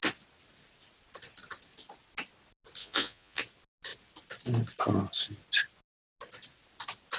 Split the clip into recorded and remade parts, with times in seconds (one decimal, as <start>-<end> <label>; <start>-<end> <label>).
0.0-2.8 recorded; 2.8-3.4 remade; 3.4-7.2 recorded